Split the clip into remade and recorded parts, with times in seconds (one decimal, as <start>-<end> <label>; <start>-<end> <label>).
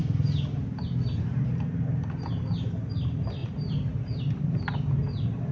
0.0-3.4 recorded; 3.4-4.2 remade; 4.2-5.5 recorded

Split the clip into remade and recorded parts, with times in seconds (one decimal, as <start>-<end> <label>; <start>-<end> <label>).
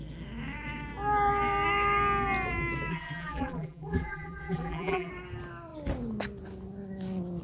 0.0-2.9 recorded; 2.9-5.1 remade; 5.1-7.4 recorded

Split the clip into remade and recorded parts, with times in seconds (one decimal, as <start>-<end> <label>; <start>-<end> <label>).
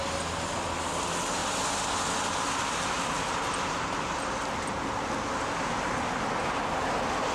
0.0-7.3 recorded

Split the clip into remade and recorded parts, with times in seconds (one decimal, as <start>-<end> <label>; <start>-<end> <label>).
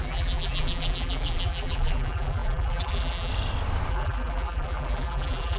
0.0-3.3 remade; 3.3-3.9 recorded; 3.9-5.6 remade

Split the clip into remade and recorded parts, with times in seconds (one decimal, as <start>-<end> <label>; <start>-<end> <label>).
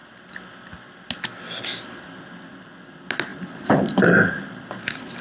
0.0-3.3 recorded; 3.3-4.6 remade; 4.6-5.2 recorded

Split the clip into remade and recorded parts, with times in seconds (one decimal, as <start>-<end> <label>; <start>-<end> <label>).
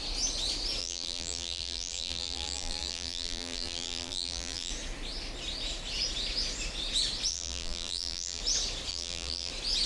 0.0-0.8 recorded; 0.8-4.7 remade; 4.7-7.3 recorded; 7.3-8.4 remade; 8.4-8.9 recorded; 8.9-9.5 remade; 9.5-9.9 recorded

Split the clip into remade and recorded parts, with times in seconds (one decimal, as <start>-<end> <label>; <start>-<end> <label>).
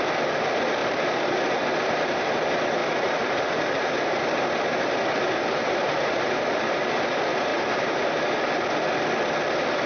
0.0-0.8 recorded; 0.8-2.3 remade; 2.3-2.8 recorded; 2.8-7.0 remade; 7.0-7.5 recorded; 7.5-8.2 remade; 8.2-9.9 recorded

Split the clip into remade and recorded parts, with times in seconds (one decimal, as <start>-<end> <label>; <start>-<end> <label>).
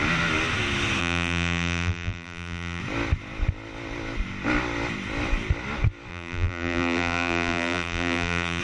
0.0-1.0 recorded; 1.0-2.8 remade; 2.8-6.1 recorded; 6.1-8.6 remade